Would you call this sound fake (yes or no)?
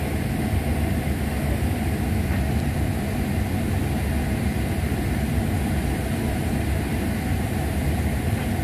yes